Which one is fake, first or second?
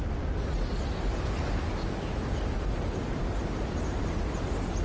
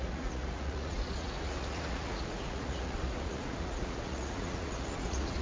second